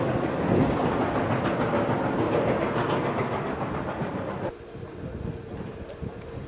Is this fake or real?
real